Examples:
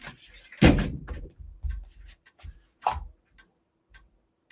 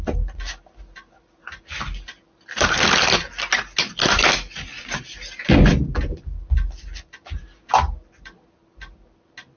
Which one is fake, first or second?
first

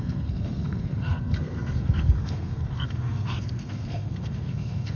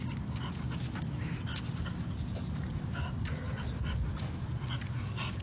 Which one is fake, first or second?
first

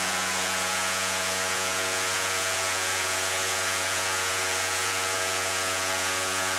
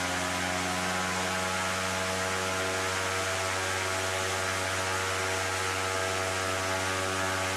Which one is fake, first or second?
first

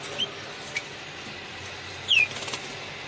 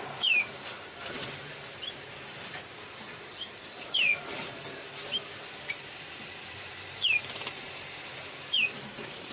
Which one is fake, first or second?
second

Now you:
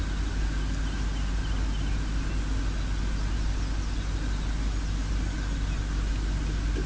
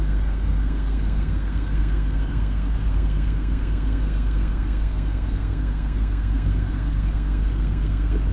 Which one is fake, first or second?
second